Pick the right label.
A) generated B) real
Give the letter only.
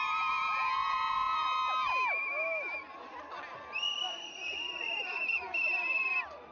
B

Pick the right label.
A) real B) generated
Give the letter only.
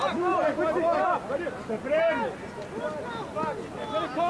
A